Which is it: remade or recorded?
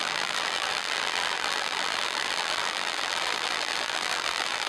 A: remade